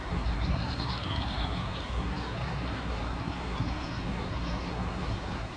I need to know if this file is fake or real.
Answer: fake